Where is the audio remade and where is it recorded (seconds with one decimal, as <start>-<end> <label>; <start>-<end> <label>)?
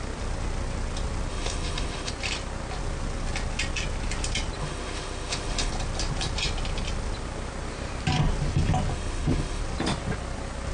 0.0-1.3 recorded; 1.3-2.1 remade; 2.1-4.6 recorded; 4.6-5.7 remade; 5.7-8.9 recorded; 8.9-9.6 remade; 9.6-10.7 recorded